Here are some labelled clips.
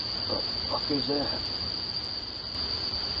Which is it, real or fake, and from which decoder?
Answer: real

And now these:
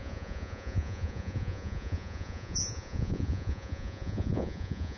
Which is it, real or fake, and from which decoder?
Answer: fake, vocoder, Vocos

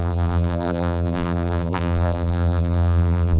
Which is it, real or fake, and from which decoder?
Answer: fake, vocoder, BigVGAN v2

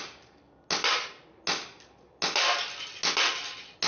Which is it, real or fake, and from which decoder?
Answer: real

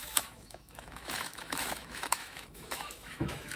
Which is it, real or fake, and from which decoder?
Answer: fake, autoencoder, DAC-VAE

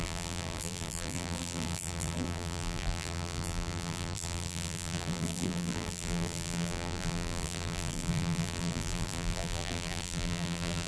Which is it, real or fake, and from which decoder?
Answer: fake, vocoder, BigVGAN v2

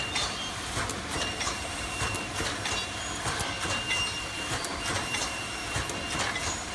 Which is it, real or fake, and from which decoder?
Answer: fake, vocoder, BigVGAN v2